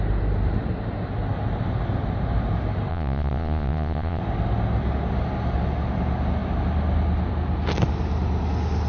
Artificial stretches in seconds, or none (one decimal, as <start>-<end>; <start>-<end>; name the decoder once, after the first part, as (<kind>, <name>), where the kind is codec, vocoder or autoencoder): 2.9-4.2 (vocoder, Vocos)